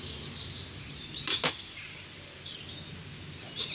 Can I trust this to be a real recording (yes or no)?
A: yes